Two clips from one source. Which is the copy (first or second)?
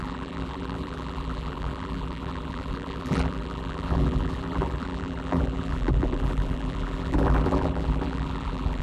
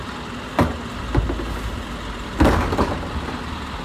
first